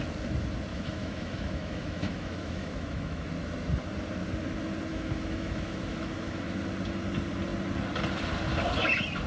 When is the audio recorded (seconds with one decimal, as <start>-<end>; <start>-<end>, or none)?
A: 0.0-0.7; 3.3-4.9; 6.6-9.3